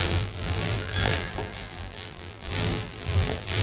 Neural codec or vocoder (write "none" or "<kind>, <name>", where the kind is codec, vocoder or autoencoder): vocoder, BigVGAN v2